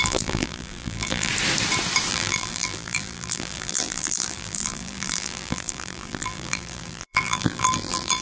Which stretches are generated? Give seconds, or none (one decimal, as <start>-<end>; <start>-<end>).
0.0-1.3; 2.1-8.2